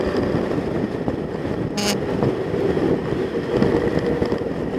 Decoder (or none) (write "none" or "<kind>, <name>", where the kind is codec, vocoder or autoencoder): none